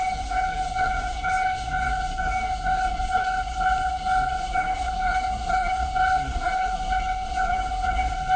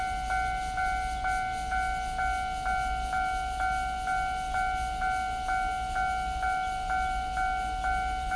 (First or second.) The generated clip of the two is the first